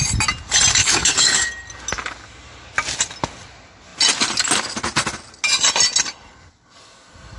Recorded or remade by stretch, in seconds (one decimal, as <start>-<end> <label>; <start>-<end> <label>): 0.0-0.8 recorded; 0.8-1.5 remade; 1.5-7.4 recorded